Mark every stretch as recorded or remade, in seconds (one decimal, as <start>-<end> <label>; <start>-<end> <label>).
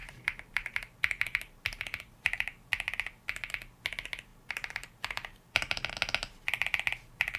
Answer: 0.0-2.7 remade; 2.7-4.3 recorded; 4.3-5.9 remade; 5.9-7.4 recorded